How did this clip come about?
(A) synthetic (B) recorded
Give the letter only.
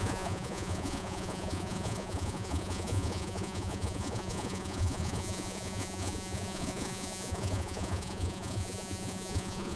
A